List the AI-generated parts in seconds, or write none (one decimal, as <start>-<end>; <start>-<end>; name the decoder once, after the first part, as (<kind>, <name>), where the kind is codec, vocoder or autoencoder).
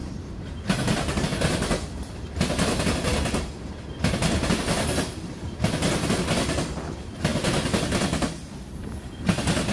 0.0-0.6 (vocoder, BigVGAN v2)